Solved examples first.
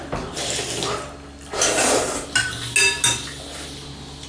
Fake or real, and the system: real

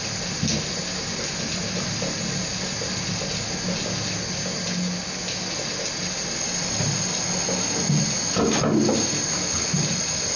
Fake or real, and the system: real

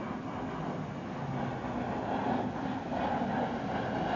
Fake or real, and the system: real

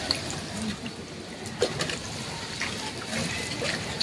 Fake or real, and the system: fake, vocoder, BigVGAN v2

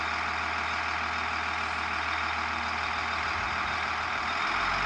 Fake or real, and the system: real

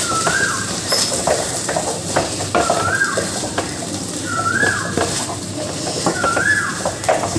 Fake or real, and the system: fake, vocoder, BigVGAN v2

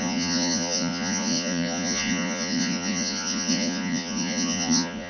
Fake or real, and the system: fake, vocoder, Vocos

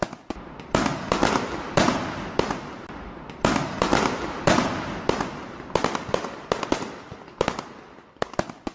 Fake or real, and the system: real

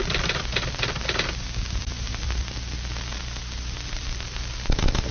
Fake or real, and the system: real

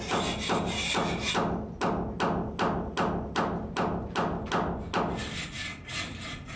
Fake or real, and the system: real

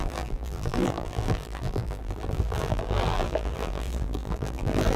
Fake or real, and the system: fake, vocoder, BigVGAN v2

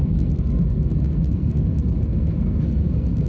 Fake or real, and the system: fake, codec, SNAC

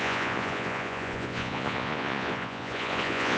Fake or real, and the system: fake, vocoder, Vocos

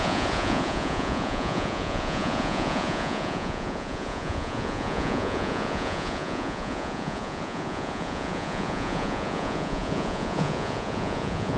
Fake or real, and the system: fake, vocoder, Vocos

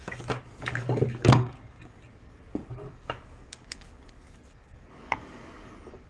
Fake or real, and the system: fake, codec, DAC